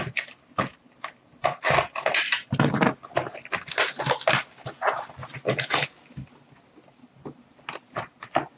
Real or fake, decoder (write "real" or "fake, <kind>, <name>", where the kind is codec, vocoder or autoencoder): real